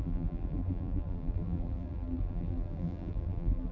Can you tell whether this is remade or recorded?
remade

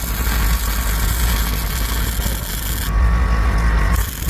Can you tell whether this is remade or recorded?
recorded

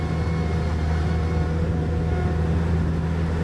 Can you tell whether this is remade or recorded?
recorded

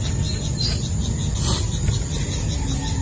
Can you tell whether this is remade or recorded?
recorded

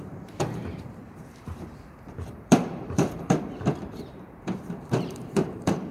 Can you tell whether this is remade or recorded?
remade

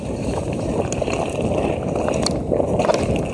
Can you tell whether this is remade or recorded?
remade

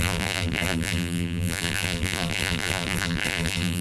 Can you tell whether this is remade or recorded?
remade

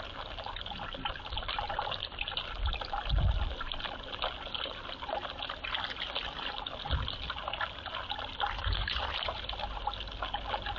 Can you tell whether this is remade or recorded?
recorded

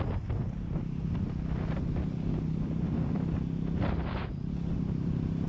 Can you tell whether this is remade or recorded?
recorded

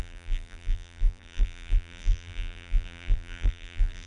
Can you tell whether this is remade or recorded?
remade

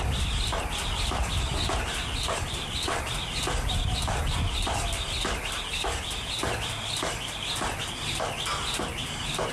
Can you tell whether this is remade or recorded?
remade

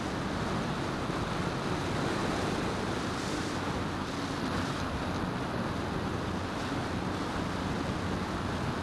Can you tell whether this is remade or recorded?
recorded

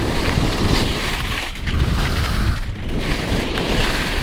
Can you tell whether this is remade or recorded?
recorded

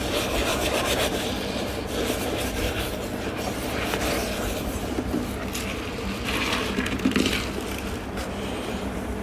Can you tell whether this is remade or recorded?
remade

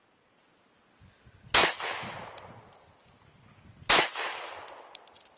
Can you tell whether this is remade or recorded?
recorded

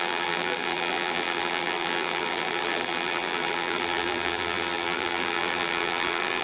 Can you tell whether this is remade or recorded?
remade